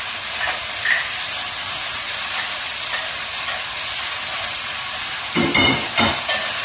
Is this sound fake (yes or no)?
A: yes